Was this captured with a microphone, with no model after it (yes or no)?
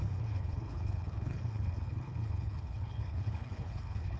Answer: no